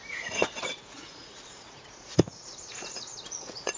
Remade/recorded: remade